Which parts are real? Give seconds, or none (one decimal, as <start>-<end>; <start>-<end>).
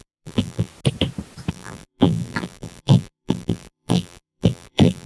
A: 0.7-1.5